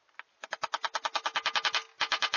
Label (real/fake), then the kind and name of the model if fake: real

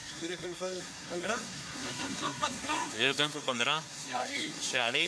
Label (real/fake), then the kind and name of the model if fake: fake, codec, SNAC